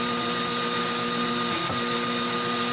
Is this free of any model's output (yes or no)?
yes